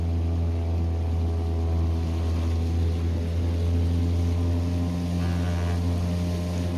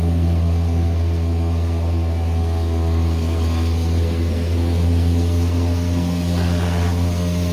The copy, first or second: second